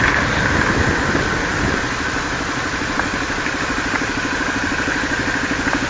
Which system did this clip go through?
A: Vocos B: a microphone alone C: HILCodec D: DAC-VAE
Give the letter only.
B